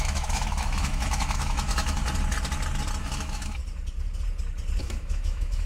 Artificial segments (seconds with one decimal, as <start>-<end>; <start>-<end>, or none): 0.0-2.0; 3.0-3.6; 4.8-5.7